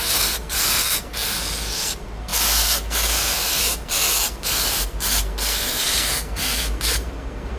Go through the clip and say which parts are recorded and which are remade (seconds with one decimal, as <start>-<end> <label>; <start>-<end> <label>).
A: 0.0-7.6 remade